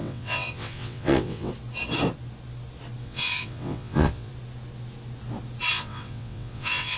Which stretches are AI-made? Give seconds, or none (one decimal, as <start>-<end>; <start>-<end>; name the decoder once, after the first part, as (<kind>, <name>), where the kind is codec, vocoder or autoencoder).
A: 0.0-1.5 (vocoder, WaveNeXt); 3.0-4.3; 5.7-7.0